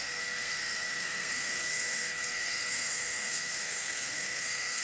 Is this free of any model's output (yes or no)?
no